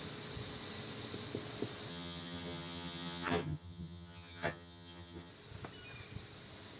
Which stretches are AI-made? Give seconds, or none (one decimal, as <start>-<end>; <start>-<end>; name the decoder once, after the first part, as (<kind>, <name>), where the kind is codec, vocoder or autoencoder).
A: 1.9-5.3 (vocoder, HiFi-GAN)